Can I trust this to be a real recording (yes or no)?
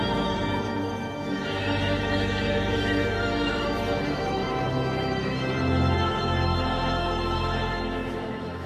no